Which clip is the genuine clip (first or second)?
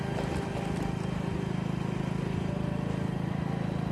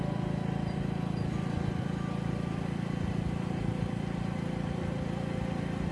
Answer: first